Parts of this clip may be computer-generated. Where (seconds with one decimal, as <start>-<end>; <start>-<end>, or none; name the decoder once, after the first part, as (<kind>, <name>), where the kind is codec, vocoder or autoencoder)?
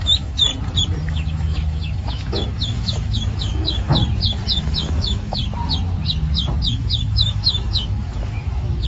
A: 0.0-0.5 (autoencoder, DAC-VAE); 1.0-4.0; 4.6-5.4; 6.7-8.9